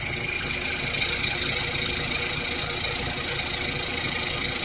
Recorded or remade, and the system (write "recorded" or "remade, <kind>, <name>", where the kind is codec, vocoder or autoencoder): recorded